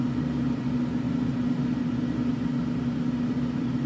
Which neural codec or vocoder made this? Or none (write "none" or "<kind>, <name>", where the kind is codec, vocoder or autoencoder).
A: none